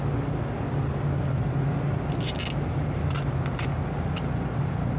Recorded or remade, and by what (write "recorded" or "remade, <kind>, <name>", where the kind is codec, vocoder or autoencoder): recorded